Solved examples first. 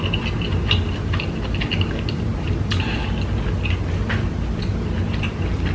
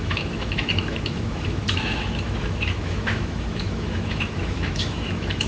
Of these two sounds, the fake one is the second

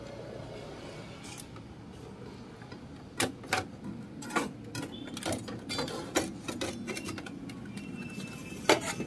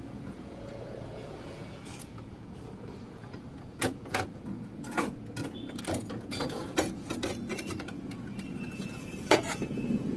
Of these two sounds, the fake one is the second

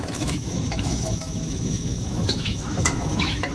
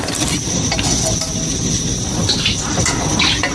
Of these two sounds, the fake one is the first